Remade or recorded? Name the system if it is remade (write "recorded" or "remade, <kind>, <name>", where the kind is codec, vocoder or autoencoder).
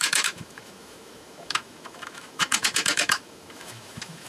remade, autoencoder, DAC-VAE